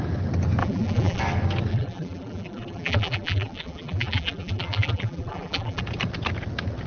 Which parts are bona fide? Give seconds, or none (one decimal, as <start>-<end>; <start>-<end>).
0.0-0.6; 1.2-1.7; 5.8-6.9